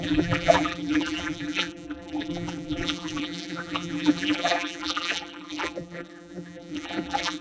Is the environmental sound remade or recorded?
remade